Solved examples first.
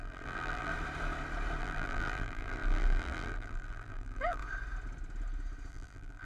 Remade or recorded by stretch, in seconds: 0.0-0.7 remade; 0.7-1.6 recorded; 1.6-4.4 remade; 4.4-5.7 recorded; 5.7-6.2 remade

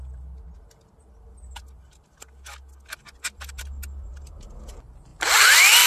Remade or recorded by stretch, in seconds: 0.0-5.9 recorded

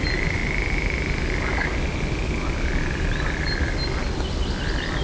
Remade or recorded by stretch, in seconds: 0.0-5.0 recorded

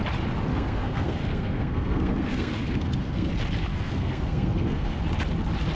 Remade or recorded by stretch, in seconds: 0.0-0.5 recorded; 0.5-3.3 remade; 3.3-3.7 recorded; 3.7-5.0 remade; 5.0-5.8 recorded